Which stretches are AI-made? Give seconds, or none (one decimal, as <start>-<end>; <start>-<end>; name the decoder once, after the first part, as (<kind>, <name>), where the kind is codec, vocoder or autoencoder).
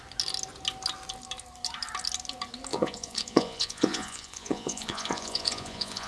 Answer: 2.7-6.1 (vocoder, Vocos)